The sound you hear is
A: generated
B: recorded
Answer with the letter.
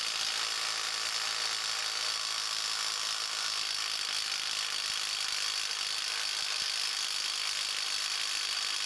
B